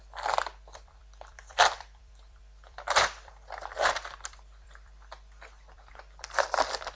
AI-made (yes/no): yes